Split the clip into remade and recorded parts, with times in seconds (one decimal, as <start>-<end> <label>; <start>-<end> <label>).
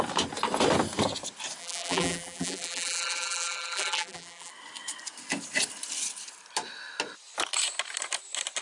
0.0-1.6 recorded; 1.6-4.5 remade; 4.5-8.6 recorded